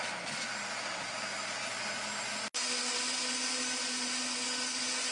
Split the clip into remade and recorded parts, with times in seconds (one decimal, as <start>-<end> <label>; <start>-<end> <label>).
0.0-5.1 recorded